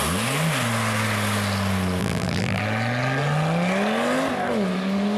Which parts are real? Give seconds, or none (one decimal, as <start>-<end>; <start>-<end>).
0.0-2.0; 2.6-5.2